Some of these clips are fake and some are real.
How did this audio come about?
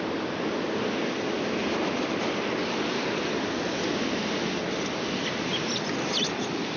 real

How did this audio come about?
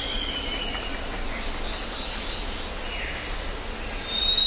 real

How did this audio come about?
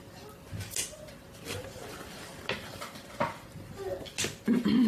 real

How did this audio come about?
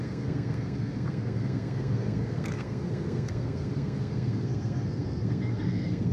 fake